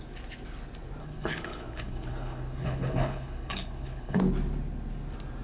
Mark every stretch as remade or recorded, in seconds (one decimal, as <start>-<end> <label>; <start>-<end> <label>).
0.0-1.0 recorded; 1.0-4.2 remade; 4.2-5.4 recorded